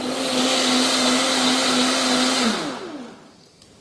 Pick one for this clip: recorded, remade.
recorded